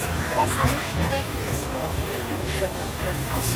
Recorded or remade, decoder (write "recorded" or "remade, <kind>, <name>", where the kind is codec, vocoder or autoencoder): remade, codec, DAC